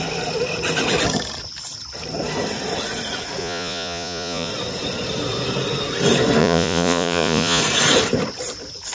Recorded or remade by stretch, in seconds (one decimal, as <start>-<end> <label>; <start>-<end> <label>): 0.0-3.4 recorded; 3.4-4.5 remade; 4.5-6.4 recorded; 6.4-7.6 remade; 7.6-8.9 recorded